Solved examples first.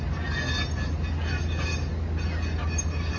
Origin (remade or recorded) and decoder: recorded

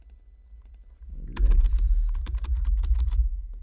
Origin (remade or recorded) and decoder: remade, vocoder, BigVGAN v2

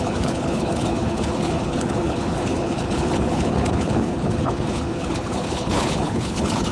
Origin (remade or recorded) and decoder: remade, codec, HILCodec